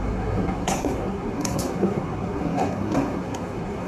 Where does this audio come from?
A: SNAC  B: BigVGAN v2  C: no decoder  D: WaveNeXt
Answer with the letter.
A